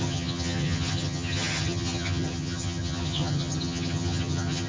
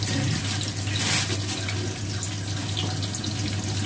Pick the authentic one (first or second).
second